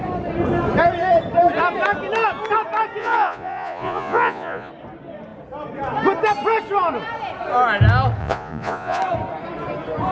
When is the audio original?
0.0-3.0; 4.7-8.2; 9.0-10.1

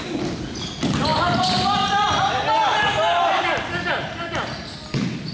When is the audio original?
0.0-5.3

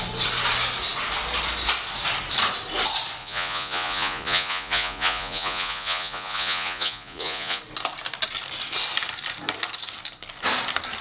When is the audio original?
0.0-3.2; 7.6-11.0